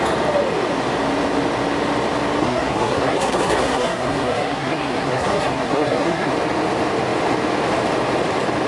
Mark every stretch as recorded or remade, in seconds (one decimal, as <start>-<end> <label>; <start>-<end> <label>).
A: 0.0-2.4 recorded; 2.4-6.3 remade; 6.3-8.7 recorded